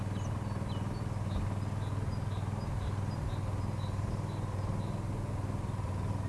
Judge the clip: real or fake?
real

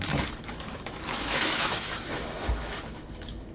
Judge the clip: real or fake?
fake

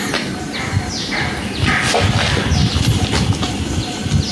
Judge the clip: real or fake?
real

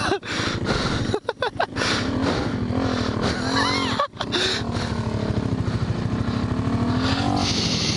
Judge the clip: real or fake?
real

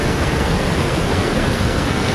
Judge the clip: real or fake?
fake